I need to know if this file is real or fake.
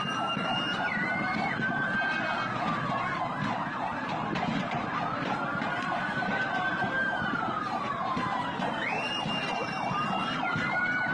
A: fake